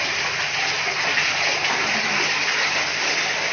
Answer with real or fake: real